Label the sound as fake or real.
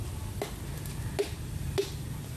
real